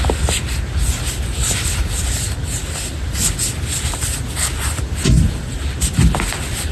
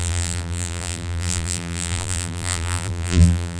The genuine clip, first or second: first